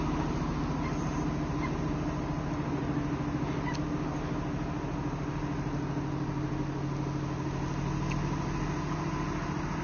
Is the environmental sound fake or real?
real